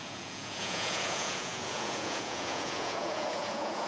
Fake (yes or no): yes